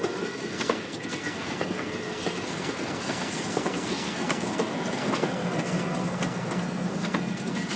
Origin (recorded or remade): remade